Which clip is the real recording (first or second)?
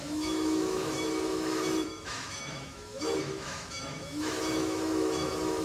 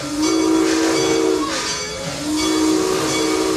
second